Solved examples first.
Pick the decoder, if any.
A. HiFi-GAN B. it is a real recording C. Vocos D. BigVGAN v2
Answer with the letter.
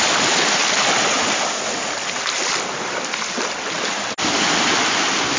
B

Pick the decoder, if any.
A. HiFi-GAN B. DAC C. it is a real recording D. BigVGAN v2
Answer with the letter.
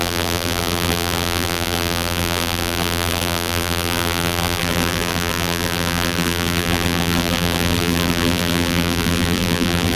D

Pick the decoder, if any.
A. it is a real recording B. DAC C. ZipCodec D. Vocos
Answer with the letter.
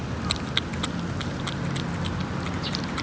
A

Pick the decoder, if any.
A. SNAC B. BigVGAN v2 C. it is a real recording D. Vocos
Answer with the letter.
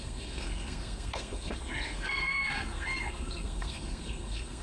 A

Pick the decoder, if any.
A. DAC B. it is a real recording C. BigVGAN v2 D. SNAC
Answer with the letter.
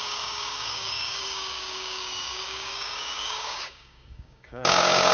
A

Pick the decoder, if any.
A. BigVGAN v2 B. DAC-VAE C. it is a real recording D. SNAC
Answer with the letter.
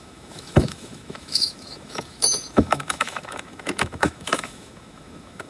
B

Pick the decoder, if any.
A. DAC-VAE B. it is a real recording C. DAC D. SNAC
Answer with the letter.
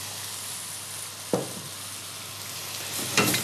B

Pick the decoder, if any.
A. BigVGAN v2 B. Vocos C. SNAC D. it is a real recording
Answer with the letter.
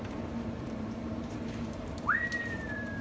A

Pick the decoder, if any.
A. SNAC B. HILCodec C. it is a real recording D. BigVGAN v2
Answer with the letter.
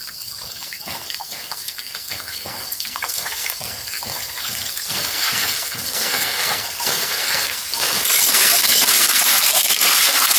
A